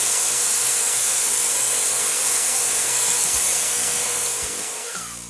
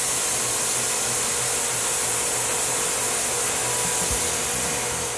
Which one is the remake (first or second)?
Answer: first